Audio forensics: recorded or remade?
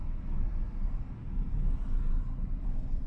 recorded